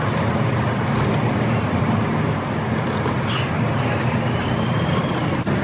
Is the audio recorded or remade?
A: recorded